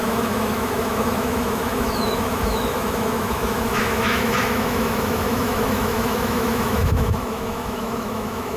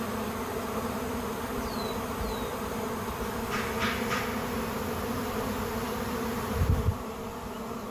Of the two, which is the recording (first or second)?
second